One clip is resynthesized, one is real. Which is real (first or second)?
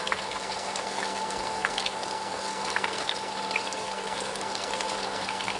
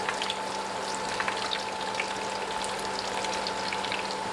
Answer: second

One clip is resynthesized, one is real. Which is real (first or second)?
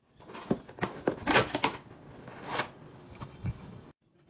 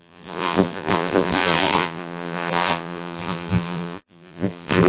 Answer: first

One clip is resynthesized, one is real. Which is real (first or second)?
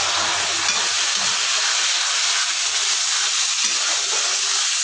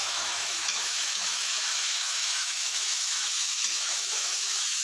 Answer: first